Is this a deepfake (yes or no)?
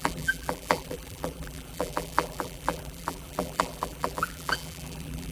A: yes